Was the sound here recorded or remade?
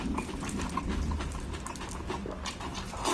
recorded